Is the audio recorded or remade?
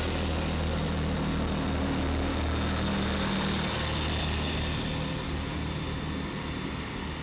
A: recorded